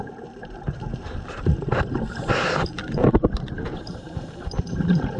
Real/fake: fake